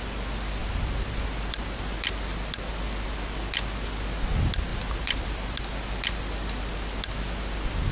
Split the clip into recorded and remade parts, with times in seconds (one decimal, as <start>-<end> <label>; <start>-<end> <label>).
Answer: 0.0-0.6 recorded; 0.6-1.1 remade; 1.1-4.7 recorded; 4.7-5.6 remade; 5.6-7.9 recorded